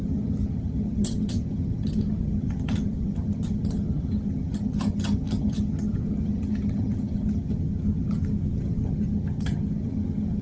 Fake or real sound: fake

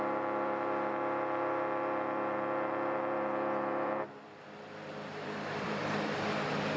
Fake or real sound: fake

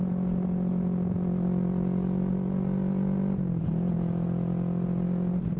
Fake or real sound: real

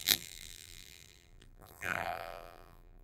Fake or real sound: fake